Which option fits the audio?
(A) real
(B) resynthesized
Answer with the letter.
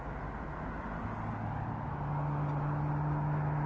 A